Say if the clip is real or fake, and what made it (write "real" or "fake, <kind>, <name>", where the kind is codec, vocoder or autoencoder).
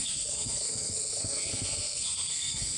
fake, codec, SNAC